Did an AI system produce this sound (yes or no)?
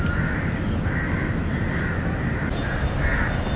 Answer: no